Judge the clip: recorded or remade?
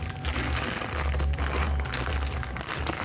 recorded